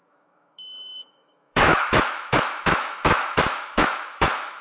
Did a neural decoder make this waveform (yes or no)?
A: yes